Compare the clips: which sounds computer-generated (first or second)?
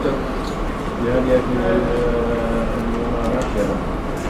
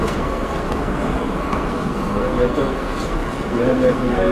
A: second